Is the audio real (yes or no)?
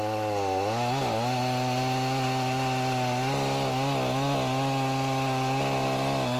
yes